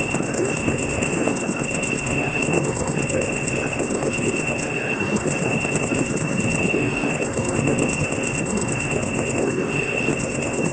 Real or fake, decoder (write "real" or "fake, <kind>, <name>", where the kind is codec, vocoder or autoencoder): fake, codec, SNAC